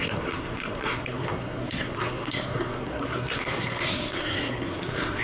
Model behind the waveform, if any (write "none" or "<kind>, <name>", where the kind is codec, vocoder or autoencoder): codec, SNAC